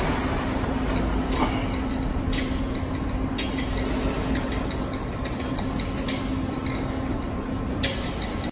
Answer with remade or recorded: recorded